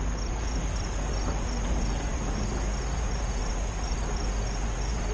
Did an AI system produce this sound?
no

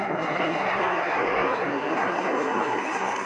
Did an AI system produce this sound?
yes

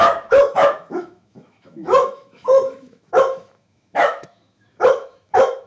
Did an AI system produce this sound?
yes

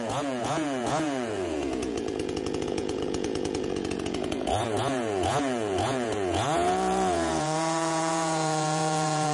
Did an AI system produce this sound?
yes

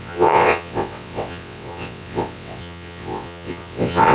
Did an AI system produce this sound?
yes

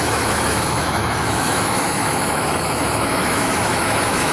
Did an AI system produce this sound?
yes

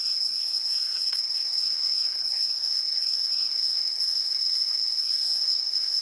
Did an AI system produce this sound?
yes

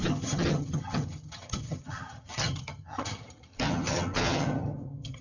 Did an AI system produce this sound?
yes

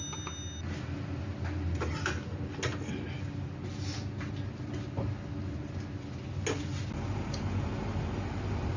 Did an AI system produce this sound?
no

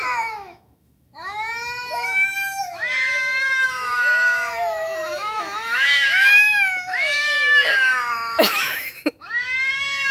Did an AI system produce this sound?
yes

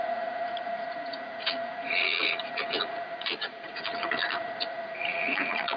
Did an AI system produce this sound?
yes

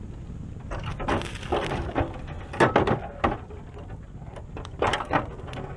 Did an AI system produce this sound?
no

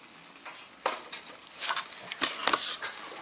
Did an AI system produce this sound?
no